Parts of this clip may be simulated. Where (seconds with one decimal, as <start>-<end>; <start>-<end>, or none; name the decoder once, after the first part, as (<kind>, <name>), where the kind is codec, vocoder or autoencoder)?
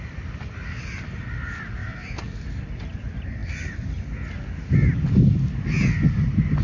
1.8-3.0 (vocoder, BigVGAN v2); 3.4-4.0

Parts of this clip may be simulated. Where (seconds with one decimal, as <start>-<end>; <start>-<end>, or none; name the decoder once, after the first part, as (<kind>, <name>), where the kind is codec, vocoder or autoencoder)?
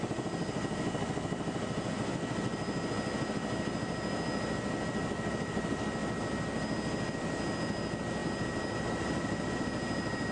none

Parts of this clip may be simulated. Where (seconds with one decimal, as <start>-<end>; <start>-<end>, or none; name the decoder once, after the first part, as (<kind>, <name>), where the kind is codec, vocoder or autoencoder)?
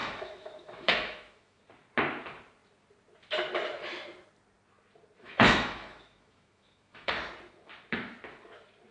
0.0-1.6 (autoencoder, DAC-VAE); 5.2-7.1